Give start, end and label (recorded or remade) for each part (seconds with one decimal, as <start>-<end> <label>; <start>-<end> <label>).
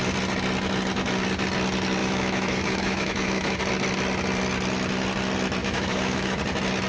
0.0-2.0 recorded; 2.0-3.6 remade; 3.6-5.6 recorded; 5.6-6.4 remade; 6.4-6.9 recorded